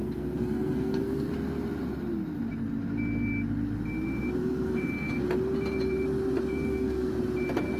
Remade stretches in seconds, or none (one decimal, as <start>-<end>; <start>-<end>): 0.0-1.3; 4.4-5.1; 6.5-7.1